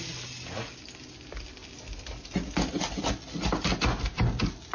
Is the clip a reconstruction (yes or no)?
no